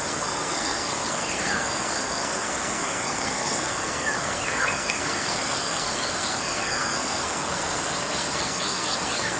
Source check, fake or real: fake